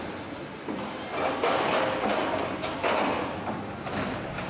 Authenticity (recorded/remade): recorded